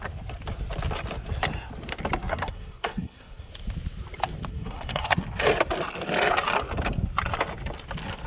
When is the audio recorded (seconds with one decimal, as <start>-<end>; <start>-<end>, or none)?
0.0-2.3; 3.5-4.5; 5.2-8.3

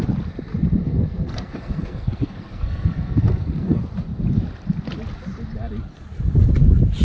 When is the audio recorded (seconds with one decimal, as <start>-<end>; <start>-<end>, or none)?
0.0-0.8; 3.8-7.0

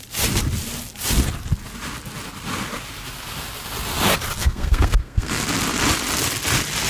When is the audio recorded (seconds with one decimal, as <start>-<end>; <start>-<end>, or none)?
0.0-4.4; 5.4-6.9

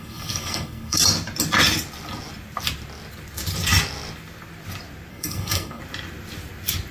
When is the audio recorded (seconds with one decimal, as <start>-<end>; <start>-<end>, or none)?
1.0-5.1; 5.8-6.9